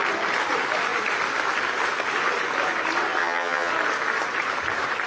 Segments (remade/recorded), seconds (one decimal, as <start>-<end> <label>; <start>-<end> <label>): 0.0-3.2 recorded; 3.2-3.7 remade; 3.7-5.1 recorded